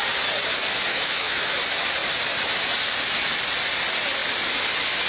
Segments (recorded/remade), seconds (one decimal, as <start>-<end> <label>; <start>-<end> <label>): 0.0-0.9 recorded; 0.9-1.4 remade; 1.4-5.1 recorded